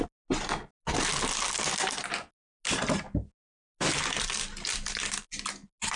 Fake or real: real